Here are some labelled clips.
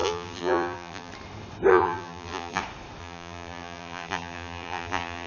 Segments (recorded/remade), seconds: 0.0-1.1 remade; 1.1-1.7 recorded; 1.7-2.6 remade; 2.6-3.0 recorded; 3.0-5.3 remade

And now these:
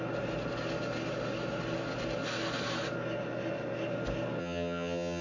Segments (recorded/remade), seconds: 0.0-4.4 recorded; 4.4-5.2 remade

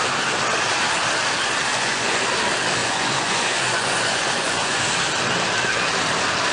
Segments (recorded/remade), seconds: 0.0-1.7 recorded; 1.7-2.2 remade; 2.2-2.8 recorded; 2.8-4.8 remade; 4.8-6.5 recorded

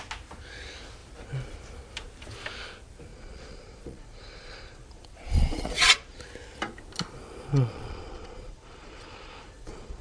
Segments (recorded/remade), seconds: 0.0-3.1 recorded; 3.1-6.2 remade; 6.2-7.5 recorded; 7.5-10.0 remade

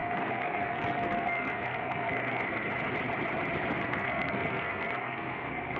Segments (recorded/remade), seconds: 0.0-2.7 remade; 2.7-3.8 recorded; 3.8-5.8 remade

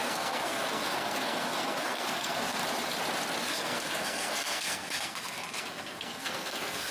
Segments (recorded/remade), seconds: 0.0-2.6 remade; 2.6-3.4 recorded; 3.4-6.9 remade